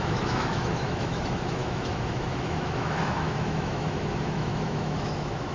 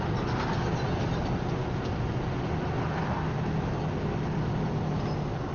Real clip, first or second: second